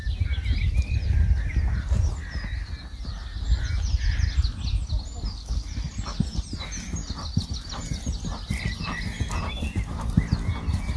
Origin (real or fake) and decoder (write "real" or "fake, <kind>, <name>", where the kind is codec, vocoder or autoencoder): real